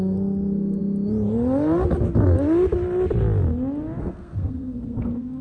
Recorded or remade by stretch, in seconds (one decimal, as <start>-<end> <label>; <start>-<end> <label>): 0.0-0.8 remade; 0.8-4.0 recorded; 4.0-5.4 remade